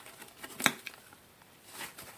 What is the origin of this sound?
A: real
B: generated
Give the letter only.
A